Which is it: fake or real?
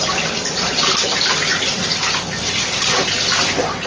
real